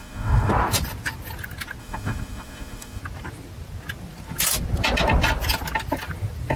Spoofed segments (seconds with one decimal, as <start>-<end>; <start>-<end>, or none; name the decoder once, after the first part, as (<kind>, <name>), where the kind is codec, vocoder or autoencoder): 0.0-0.5 (autoencoder, DAC-VAE); 1.8-3.0